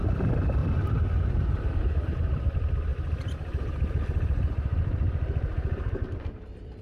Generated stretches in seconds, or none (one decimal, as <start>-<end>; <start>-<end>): 0.0-6.8